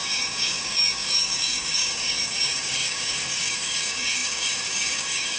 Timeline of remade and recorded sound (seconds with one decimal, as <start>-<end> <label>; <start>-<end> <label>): 0.0-5.4 remade